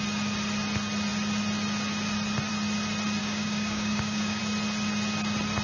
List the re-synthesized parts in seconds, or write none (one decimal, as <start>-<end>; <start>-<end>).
3.2-4.4